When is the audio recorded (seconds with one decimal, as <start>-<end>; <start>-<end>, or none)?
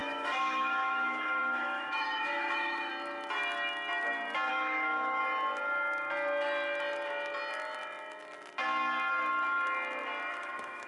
2.9-4.5; 5.2-10.3